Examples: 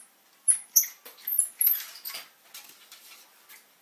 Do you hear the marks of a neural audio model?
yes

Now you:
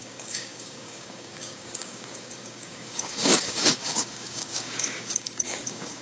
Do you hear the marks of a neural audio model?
yes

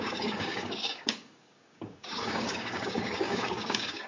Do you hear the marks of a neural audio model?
yes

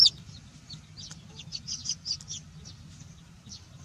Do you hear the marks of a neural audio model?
no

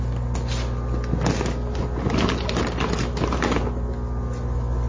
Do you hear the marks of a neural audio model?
no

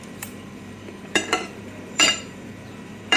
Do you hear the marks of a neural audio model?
yes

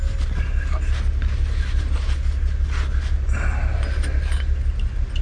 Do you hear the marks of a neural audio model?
no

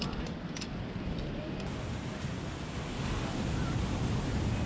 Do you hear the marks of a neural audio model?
no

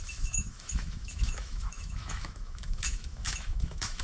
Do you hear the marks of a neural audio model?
yes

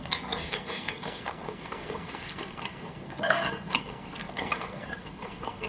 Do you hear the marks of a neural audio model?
yes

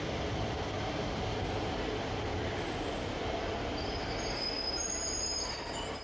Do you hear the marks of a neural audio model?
no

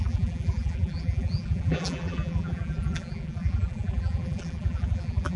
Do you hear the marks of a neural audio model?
yes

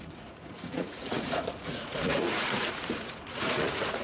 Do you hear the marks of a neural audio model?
yes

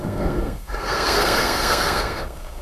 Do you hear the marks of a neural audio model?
yes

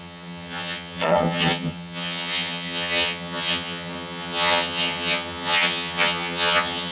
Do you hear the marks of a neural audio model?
yes